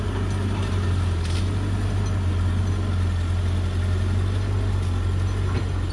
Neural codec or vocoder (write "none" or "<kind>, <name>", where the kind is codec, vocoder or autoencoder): none